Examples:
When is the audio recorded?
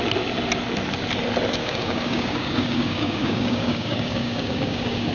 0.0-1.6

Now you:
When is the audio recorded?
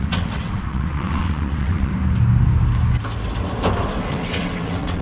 1.9-4.1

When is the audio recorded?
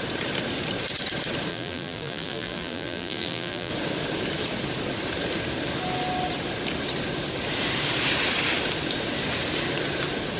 0.0-1.5; 3.7-10.4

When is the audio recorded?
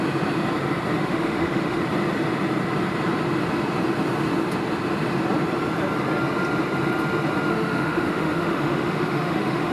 0.0-1.0; 1.8-7.5